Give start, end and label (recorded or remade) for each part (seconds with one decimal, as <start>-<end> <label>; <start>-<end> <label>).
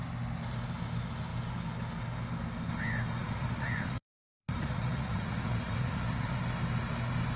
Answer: 0.0-3.2 recorded; 3.2-6.4 remade; 6.4-7.4 recorded